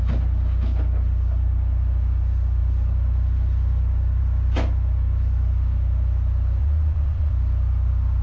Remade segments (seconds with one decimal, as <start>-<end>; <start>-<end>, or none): 6.6-7.3